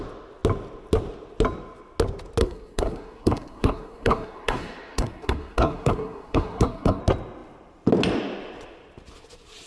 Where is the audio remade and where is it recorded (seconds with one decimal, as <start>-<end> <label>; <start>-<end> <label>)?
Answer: 0.0-2.4 recorded; 2.4-7.0 remade; 7.0-9.7 recorded